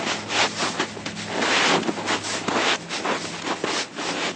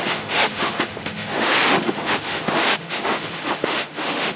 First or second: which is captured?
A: first